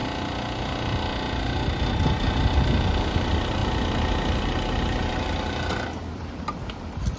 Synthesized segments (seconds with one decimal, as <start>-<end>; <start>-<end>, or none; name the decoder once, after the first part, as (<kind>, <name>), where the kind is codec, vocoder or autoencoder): 2.4-3.6 (vocoder, BigVGAN v2); 4.3-7.2